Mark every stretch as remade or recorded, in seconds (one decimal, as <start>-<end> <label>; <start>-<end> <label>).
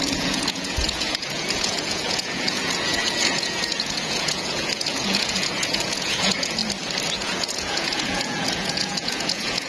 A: 0.0-6.6 remade; 6.6-7.1 recorded; 7.1-9.7 remade